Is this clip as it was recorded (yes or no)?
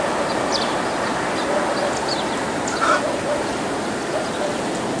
yes